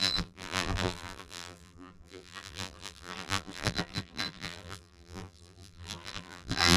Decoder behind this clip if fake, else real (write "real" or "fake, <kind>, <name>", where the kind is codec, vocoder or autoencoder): fake, vocoder, BigVGAN v2